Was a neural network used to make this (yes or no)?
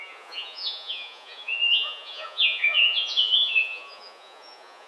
yes